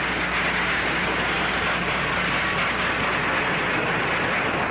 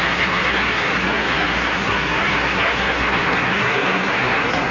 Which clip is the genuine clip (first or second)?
first